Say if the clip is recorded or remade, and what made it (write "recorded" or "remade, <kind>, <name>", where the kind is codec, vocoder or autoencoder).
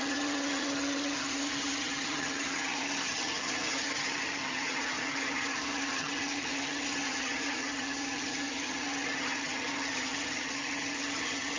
remade, vocoder, HiFi-GAN